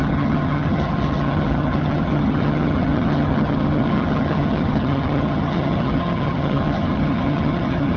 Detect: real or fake fake